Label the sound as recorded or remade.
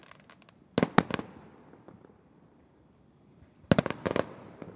recorded